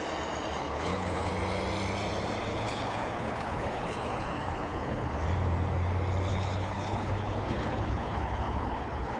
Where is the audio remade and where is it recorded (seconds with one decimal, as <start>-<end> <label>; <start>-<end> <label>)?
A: 0.0-0.6 recorded; 0.6-1.3 remade; 1.3-2.5 recorded; 2.5-5.1 remade; 5.1-6.3 recorded; 6.3-9.2 remade